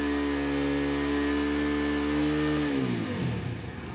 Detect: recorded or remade recorded